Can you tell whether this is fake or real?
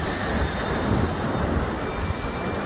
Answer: real